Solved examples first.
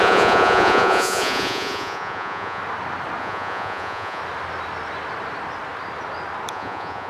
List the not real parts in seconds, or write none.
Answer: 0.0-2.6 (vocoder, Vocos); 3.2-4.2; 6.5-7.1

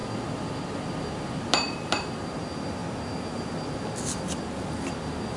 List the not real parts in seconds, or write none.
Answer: none

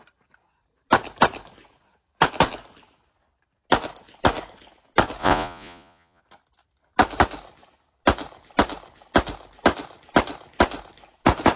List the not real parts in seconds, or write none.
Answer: 5.2-6.2 (vocoder, Vocos)

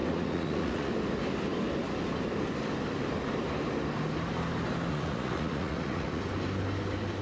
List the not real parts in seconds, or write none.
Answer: 0.0-0.9 (vocoder, Vocos); 4.9-6.2